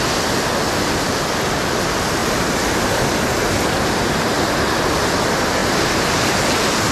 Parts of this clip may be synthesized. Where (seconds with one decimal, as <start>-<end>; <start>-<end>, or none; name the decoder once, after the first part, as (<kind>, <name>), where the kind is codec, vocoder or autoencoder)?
none